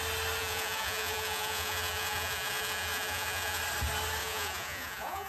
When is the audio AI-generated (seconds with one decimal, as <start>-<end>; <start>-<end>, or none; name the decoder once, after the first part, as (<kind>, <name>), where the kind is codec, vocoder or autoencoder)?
0.4-3.6 (vocoder, Vocos); 4.2-5.3